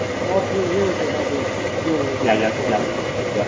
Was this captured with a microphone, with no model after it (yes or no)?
yes